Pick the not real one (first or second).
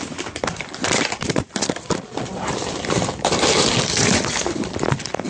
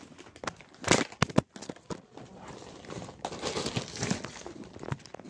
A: first